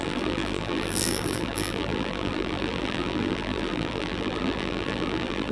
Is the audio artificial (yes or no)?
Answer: yes